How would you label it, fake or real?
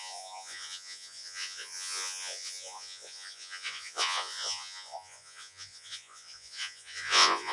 fake